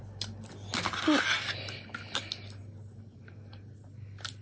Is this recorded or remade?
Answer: recorded